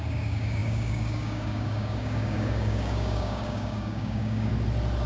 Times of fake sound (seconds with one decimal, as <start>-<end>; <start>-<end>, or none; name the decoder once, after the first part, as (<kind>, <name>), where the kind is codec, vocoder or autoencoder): 0.0-4.5 (codec, DAC)